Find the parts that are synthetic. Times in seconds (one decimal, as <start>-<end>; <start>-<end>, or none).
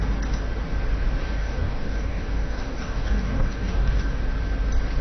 1.2-4.2